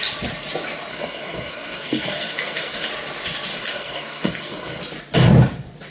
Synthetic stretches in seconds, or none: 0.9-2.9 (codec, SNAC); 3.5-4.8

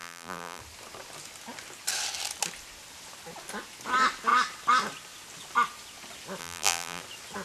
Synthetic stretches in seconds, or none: 0.0-0.6 (vocoder, BigVGAN v2); 6.4-7.0